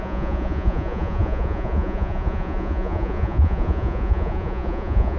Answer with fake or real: fake